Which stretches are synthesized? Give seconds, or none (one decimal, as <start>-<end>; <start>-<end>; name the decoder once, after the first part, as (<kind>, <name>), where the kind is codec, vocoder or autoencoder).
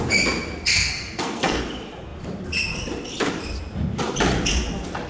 0.7-1.6 (codec, SNAC)